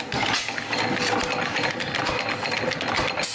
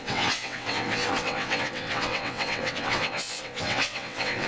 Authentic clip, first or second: first